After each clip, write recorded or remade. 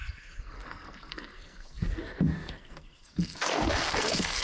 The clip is remade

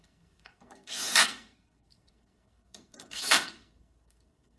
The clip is remade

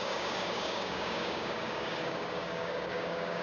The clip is remade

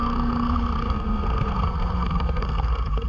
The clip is remade